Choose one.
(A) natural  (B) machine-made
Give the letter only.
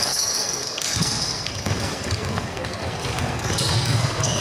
B